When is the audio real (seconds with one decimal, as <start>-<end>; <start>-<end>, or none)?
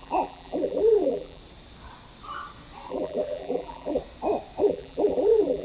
1.4-2.9; 4.0-4.6